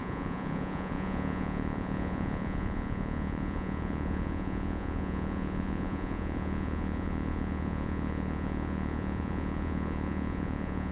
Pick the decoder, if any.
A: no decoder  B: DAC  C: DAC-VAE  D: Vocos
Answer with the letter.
D